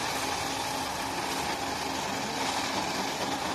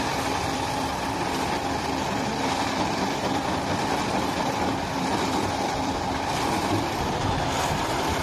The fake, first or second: second